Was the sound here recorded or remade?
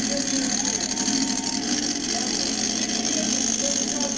recorded